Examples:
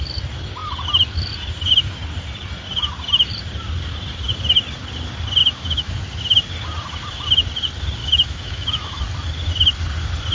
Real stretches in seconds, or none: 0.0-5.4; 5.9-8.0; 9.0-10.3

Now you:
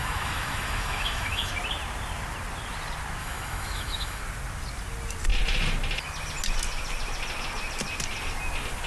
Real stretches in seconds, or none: 1.5-3.2; 4.2-8.9

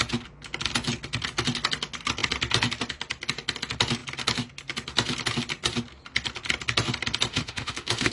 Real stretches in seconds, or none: 0.0-7.3

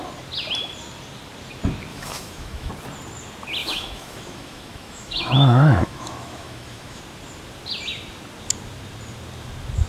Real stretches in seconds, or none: 0.0-1.9; 2.7-3.6; 7.0-9.9

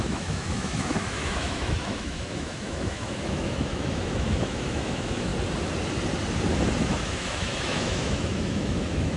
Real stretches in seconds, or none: 5.3-6.8